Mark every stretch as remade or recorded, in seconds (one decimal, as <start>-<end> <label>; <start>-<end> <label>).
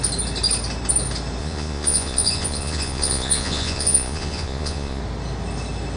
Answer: 0.0-1.4 recorded; 1.4-5.0 remade; 5.0-6.0 recorded